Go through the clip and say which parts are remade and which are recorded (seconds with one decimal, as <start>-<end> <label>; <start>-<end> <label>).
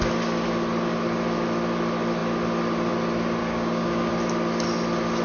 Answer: 0.0-3.4 recorded; 3.4-4.1 remade; 4.1-5.2 recorded